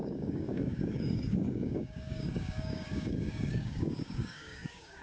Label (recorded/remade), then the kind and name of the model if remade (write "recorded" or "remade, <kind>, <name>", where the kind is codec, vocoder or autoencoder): remade, codec, DAC